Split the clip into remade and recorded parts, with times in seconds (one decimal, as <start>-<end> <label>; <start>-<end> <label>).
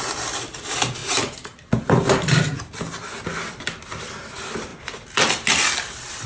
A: 0.0-1.0 remade; 1.0-3.5 recorded; 3.5-4.7 remade; 4.7-5.8 recorded; 5.8-6.3 remade